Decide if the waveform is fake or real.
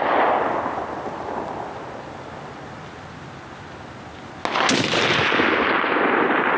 real